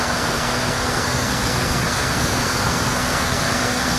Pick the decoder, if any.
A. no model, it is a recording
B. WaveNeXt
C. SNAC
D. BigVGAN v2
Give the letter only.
C